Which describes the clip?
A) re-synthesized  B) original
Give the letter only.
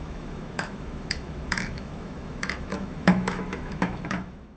A